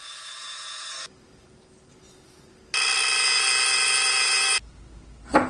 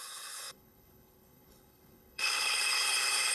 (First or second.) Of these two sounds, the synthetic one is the second